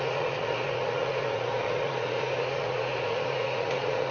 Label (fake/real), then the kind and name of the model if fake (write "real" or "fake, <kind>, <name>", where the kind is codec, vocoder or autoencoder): fake, vocoder, Vocos